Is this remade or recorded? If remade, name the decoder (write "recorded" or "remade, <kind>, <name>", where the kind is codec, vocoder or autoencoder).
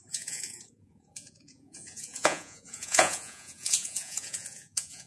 remade, vocoder, Vocos